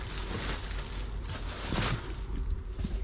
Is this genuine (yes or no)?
no